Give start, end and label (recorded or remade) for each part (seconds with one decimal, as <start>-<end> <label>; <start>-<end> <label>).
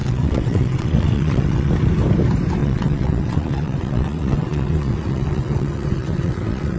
0.0-1.7 remade; 1.7-2.6 recorded; 2.6-6.8 remade